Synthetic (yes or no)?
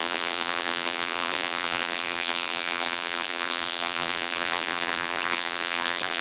yes